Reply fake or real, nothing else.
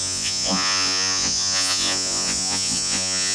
fake